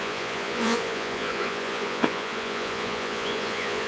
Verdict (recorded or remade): remade